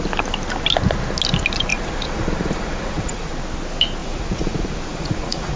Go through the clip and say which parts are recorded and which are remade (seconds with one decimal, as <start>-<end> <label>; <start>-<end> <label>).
0.0-1.7 recorded; 1.7-3.3 remade; 3.3-4.0 recorded; 4.0-5.6 remade